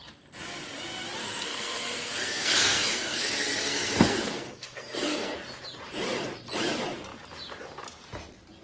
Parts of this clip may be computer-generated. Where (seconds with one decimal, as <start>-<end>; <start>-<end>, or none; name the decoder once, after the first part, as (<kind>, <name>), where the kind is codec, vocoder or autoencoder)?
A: 1.2-5.4 (codec, SNAC)